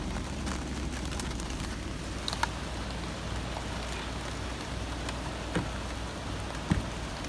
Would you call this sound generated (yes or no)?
no